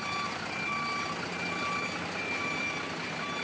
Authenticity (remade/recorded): recorded